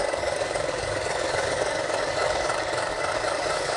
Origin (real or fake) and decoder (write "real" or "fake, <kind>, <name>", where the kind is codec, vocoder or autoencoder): fake, codec, DAC